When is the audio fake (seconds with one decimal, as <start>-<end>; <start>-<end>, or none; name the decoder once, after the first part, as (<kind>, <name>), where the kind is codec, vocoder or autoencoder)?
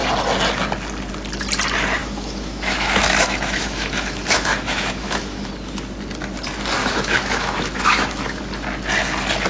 2.0-5.5 (autoencoder, DAC-VAE); 6.8-8.4